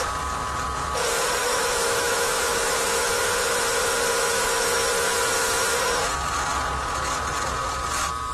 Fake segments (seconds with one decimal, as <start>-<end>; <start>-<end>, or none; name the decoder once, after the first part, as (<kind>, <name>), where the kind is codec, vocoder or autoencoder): 1.4-3.3 (autoencoder, DAC-VAE); 4.1-4.8